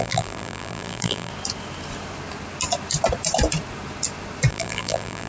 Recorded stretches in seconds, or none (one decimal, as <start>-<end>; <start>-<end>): 1.3-4.5